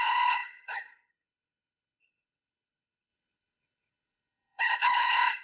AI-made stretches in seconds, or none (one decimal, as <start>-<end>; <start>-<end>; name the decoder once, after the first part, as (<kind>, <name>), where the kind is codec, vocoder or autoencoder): 0.0-5.4 (codec, HILCodec)